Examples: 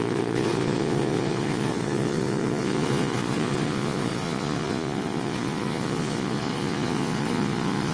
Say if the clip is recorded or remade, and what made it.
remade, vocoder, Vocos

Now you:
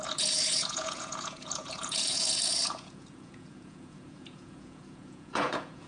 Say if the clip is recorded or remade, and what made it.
remade, vocoder, Vocos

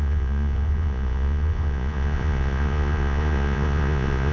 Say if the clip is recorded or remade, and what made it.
remade, vocoder, Vocos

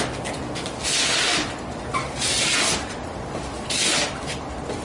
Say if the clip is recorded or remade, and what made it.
recorded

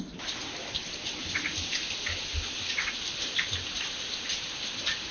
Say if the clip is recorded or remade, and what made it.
recorded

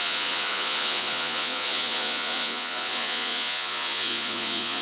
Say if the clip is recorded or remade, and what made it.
remade, vocoder, Vocos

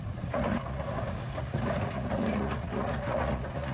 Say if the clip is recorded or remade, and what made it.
remade, vocoder, Vocos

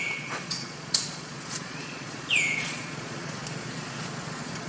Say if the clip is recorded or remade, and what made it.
remade, vocoder, Vocos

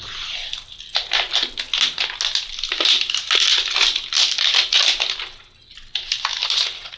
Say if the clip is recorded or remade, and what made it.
recorded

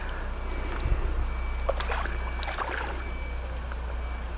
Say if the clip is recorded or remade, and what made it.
recorded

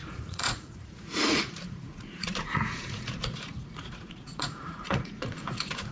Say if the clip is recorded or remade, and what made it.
remade, vocoder, Vocos